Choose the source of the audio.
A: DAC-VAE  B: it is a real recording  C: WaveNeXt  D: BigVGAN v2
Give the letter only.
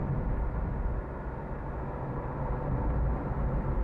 B